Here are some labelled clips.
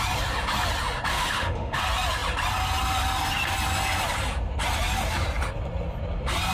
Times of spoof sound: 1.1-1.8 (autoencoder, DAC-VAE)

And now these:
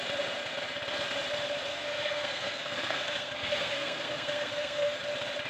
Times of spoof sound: 1.7-5.0 (codec, SNAC)

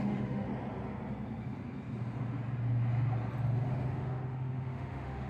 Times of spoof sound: 0.0-0.5 (autoencoder, DAC-VAE); 3.7-5.3